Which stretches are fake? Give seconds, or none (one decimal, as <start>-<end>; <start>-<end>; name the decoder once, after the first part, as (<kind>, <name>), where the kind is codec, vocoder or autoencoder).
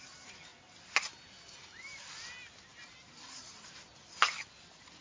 none